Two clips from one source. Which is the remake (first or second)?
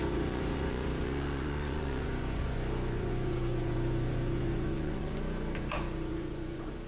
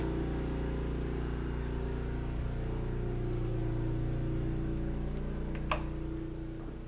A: first